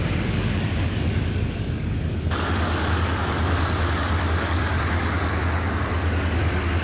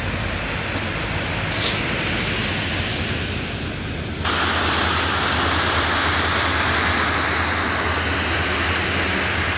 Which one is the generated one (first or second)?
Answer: first